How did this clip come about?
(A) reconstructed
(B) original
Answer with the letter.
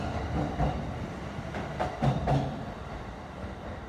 A